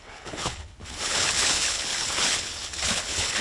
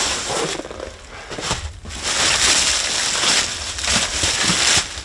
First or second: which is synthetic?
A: first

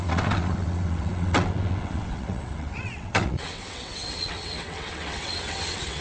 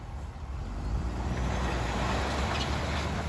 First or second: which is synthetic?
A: first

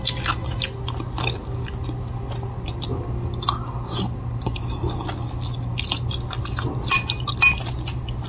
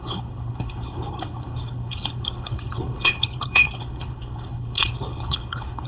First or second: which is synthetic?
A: second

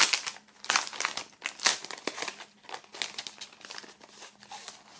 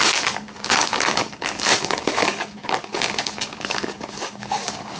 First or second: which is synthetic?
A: second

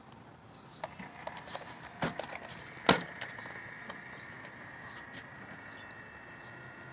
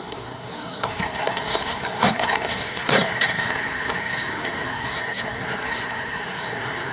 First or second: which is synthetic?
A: second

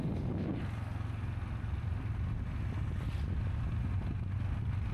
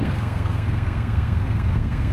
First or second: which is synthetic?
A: second